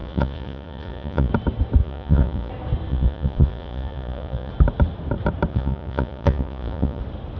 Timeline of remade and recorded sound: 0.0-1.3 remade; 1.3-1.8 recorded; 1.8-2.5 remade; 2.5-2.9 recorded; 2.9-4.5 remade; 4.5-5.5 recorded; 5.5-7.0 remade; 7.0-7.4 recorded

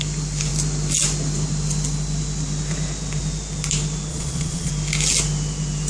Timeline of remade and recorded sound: 0.0-4.1 recorded; 4.1-4.7 remade; 4.7-5.9 recorded

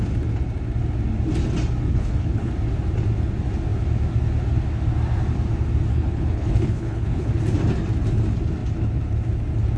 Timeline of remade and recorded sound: 0.0-1.9 recorded; 1.9-2.5 remade; 2.5-5.9 recorded; 5.9-7.3 remade; 7.3-9.8 recorded

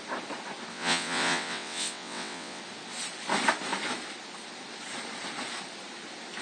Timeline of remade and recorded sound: 0.0-0.7 recorded; 0.7-2.6 remade; 2.6-6.4 recorded

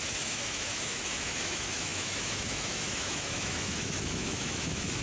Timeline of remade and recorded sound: 0.0-5.0 remade

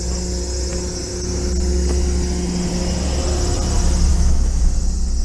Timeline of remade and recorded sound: 0.0-4.1 recorded; 4.1-4.7 remade; 4.7-5.2 recorded